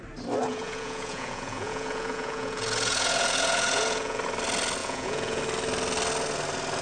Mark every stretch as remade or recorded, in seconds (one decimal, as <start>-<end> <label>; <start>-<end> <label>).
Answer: 0.0-0.5 recorded; 0.5-4.2 remade; 4.2-4.8 recorded; 4.8-5.4 remade; 5.4-6.8 recorded